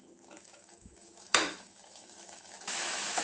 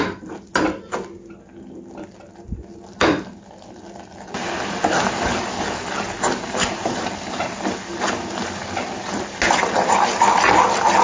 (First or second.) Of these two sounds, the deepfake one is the first